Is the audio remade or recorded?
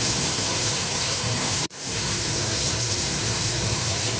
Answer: remade